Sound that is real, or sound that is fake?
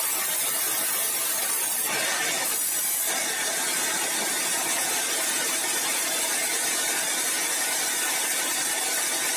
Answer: real